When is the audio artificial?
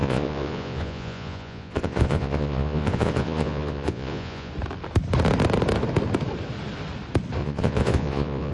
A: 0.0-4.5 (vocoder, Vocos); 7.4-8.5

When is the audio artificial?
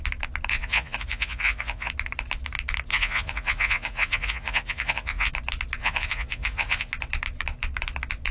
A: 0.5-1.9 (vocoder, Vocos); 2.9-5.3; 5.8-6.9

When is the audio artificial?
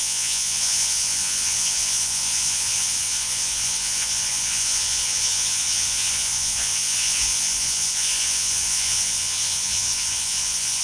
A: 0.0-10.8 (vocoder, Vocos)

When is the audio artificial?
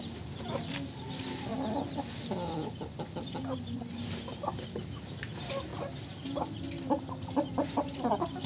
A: none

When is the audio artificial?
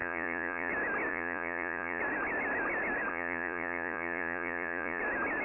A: 0.0-0.7 (vocoder, Vocos); 1.1-2.0; 3.1-5.0